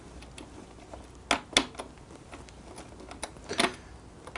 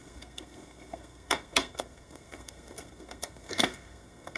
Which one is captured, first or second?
first